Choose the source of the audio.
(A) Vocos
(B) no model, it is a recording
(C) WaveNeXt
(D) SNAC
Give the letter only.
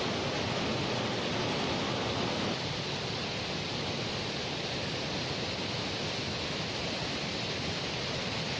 B